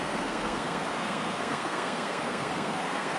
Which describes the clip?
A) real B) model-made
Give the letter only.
B